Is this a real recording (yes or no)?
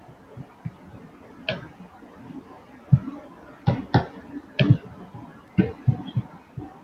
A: yes